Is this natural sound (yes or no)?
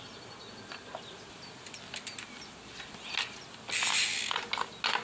yes